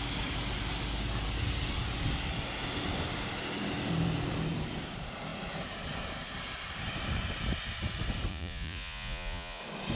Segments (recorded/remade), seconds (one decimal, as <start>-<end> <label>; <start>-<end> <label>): 0.0-8.3 recorded; 8.3-9.6 remade; 9.6-10.0 recorded